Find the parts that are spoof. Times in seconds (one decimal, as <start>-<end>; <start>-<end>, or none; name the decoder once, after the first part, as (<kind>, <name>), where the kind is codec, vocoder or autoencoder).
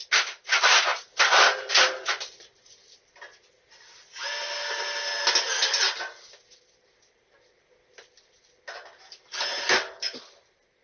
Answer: none